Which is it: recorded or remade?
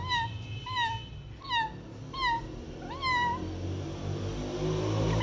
recorded